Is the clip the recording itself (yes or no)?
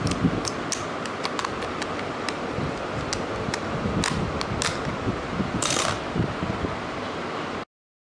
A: yes